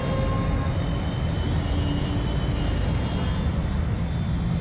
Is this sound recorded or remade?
recorded